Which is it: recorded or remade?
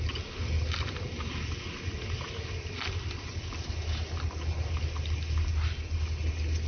recorded